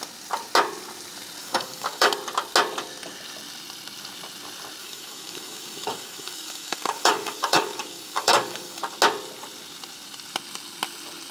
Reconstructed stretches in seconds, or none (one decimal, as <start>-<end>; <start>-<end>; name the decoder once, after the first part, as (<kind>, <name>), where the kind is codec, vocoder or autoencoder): 1.4-2.1 (codec, DAC); 4.8-8.8